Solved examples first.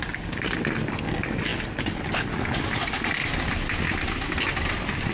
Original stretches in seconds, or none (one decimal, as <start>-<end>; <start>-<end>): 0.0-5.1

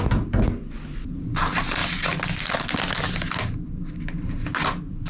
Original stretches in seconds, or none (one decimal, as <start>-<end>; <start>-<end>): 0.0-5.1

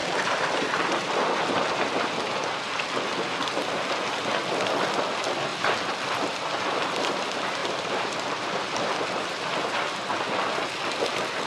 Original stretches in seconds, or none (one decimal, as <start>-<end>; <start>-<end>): 0.9-7.6; 8.8-11.5